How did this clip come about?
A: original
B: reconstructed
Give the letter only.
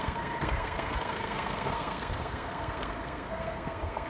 B